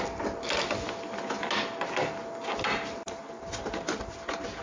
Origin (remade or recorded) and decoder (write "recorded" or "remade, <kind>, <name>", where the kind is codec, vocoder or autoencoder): recorded